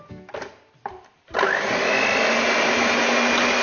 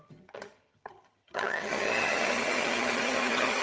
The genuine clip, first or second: first